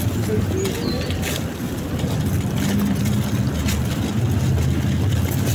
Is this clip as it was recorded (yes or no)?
yes